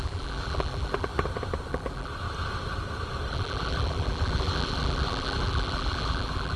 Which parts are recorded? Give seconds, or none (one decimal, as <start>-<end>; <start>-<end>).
1.1-1.7; 2.1-3.3